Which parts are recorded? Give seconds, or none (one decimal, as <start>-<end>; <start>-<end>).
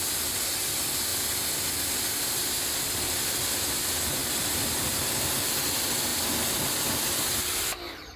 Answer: 0.0-4.2; 4.9-8.2